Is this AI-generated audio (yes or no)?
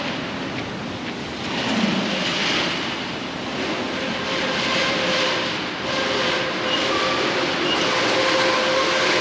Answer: no